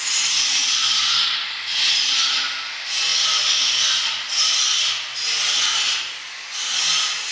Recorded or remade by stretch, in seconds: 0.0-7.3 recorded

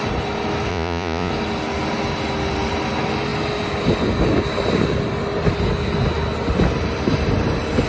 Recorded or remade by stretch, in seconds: 0.0-0.7 recorded; 0.7-1.3 remade; 1.3-7.9 recorded

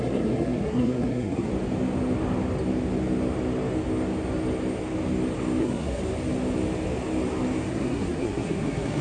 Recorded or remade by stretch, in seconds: 0.0-1.5 remade; 1.5-5.6 recorded; 5.6-6.0 remade; 6.0-7.7 recorded; 7.7-9.0 remade

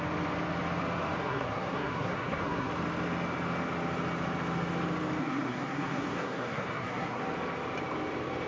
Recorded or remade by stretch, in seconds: 0.0-1.2 recorded; 1.2-2.7 remade; 2.7-5.2 recorded; 5.2-7.2 remade; 7.2-8.5 recorded

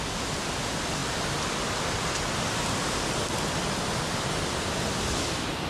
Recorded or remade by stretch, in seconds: 0.0-5.7 recorded

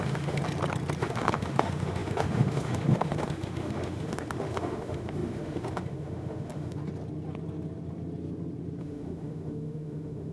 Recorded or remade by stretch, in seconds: 0.0-0.4 remade; 0.4-1.0 recorded; 1.0-6.8 remade; 6.8-8.8 recorded; 8.8-10.3 remade

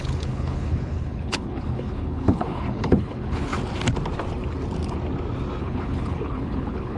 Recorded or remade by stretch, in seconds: 0.0-3.5 remade; 3.5-5.6 recorded; 5.6-7.0 remade